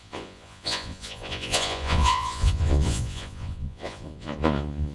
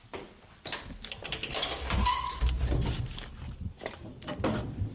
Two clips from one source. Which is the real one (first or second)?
second